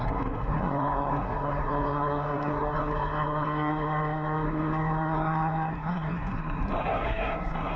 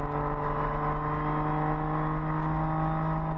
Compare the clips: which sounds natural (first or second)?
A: second